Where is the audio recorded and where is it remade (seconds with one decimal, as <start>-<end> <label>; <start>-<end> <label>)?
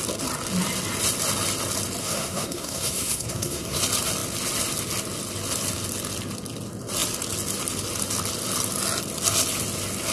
0.0-2.0 recorded; 2.0-3.8 remade; 3.8-10.1 recorded